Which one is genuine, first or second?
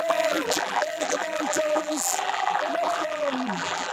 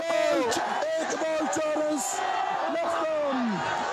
second